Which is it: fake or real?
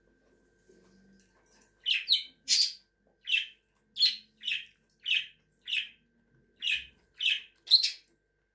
real